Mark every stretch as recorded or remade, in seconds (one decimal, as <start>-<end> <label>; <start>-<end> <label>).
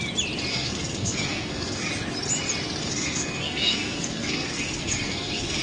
0.0-0.5 recorded; 0.5-1.9 remade; 1.9-2.8 recorded; 2.8-5.6 remade